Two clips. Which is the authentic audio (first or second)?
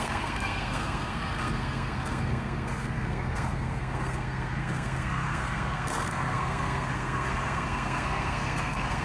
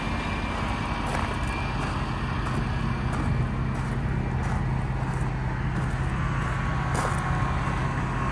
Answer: second